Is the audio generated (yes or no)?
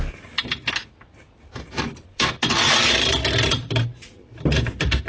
no